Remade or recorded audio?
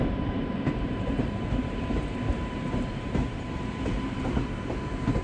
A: remade